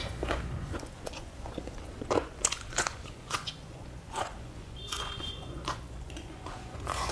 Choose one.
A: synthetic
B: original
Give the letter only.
A